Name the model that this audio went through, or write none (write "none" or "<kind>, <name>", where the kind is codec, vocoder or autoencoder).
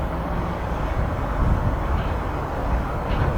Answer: codec, DAC